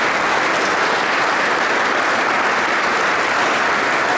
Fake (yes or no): no